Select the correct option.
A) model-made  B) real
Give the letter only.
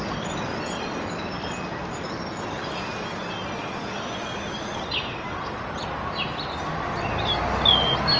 B